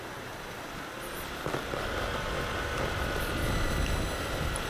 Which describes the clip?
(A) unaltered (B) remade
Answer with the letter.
A